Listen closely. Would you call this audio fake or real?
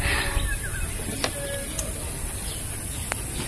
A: real